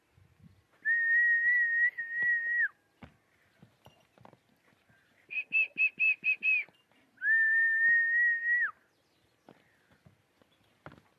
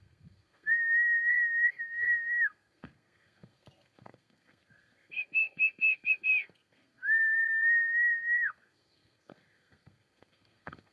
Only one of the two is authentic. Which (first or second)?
first